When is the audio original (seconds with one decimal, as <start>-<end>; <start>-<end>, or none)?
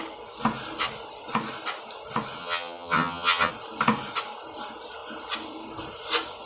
0.0-2.4; 3.5-6.5